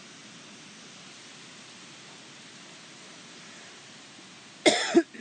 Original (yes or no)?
yes